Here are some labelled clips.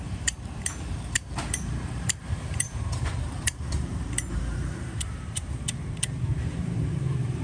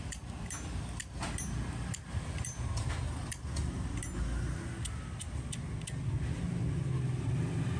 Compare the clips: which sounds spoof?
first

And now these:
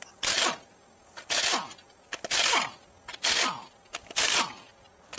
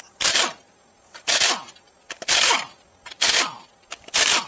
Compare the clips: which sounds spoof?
second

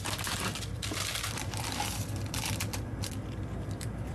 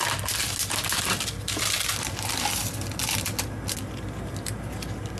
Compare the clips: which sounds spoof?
first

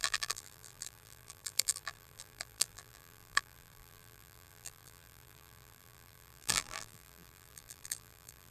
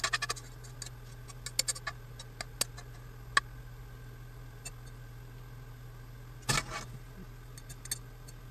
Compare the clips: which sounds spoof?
first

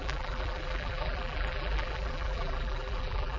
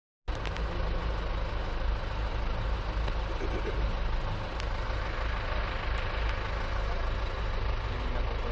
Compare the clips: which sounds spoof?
first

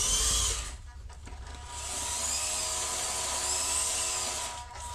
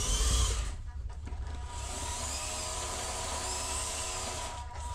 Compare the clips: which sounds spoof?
second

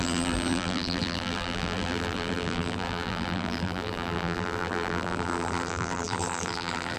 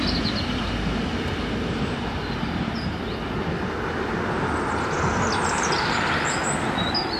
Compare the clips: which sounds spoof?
first